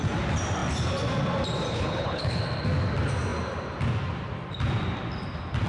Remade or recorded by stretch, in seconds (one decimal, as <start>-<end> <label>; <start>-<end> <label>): 0.0-1.7 recorded; 1.7-2.4 remade; 2.4-5.7 recorded